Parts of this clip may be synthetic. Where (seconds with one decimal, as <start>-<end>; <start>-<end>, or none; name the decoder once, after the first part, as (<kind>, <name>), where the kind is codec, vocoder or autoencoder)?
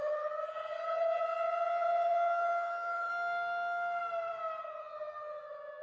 0.0-3.1 (vocoder, HiFi-GAN); 4.6-5.8